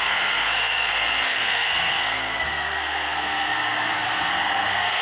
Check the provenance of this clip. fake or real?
fake